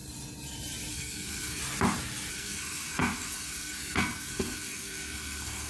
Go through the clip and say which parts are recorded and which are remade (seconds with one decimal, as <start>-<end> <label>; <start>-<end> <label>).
0.0-0.9 recorded; 0.9-1.6 remade; 1.6-2.3 recorded; 2.3-5.7 remade